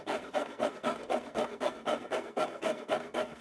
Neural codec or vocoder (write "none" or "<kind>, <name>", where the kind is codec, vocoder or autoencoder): codec, SNAC